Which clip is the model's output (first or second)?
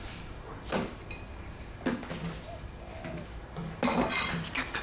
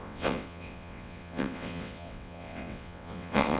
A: second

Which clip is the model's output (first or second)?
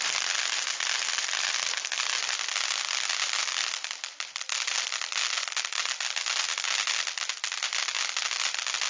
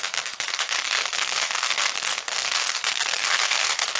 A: second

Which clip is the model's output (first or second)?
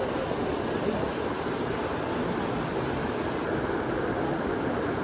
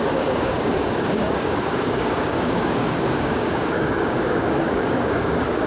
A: second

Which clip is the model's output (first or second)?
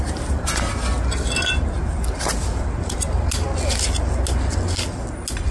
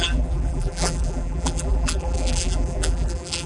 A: second